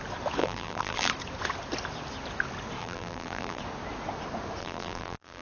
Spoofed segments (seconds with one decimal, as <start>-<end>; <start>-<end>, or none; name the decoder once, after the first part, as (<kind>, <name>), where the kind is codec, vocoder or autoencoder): 0.4-1.1 (vocoder, BigVGAN v2); 2.8-3.6; 4.6-5.4